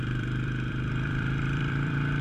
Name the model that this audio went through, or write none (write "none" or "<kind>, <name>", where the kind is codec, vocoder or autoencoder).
vocoder, BigVGAN v2